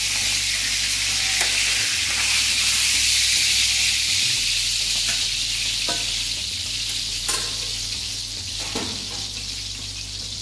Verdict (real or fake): real